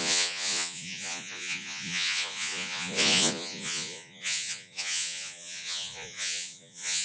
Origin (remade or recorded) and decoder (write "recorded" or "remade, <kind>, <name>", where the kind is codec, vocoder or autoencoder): remade, vocoder, Vocos